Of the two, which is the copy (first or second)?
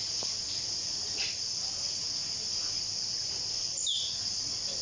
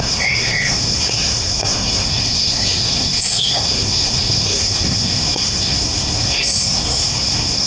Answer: second